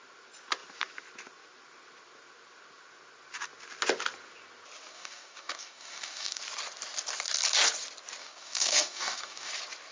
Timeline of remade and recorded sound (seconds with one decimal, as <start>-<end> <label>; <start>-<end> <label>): 0.0-4.9 recorded; 4.9-6.4 remade; 6.4-8.2 recorded; 8.2-9.5 remade; 9.5-9.9 recorded